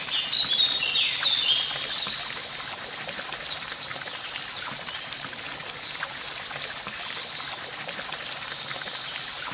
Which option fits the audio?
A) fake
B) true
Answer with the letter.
B